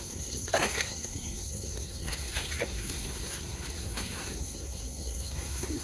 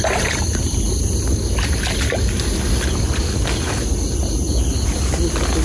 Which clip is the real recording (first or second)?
second